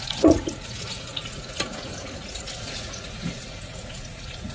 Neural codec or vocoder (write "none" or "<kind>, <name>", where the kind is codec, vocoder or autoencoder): vocoder, Vocos